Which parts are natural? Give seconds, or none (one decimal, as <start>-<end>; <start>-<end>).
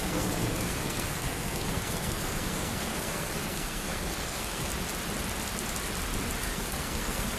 4.7-6.4